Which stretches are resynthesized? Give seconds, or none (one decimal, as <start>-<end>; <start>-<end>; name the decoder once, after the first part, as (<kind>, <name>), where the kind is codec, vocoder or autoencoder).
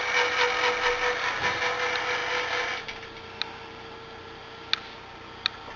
none